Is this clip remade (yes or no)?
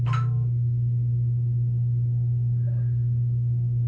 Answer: no